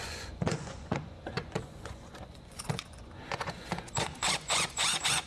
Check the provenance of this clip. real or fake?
fake